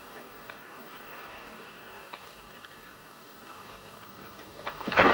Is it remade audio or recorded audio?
remade